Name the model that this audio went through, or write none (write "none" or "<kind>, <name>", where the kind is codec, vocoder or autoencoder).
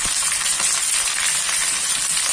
none